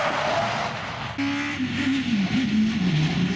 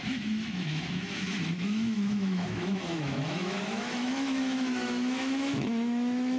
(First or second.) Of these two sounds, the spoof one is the second